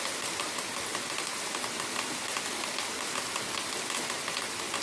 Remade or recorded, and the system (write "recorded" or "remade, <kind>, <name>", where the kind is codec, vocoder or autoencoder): remade, vocoder, BigVGAN v2